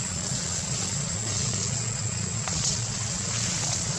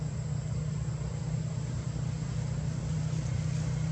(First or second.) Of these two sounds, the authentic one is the second